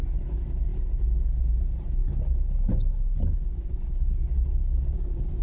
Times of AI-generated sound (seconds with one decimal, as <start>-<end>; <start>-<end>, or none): none